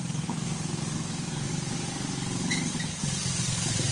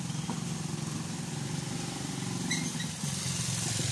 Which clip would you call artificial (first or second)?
first